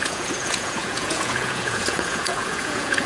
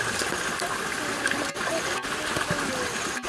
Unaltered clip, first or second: second